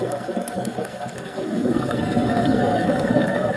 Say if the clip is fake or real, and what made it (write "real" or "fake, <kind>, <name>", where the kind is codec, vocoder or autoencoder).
fake, codec, SNAC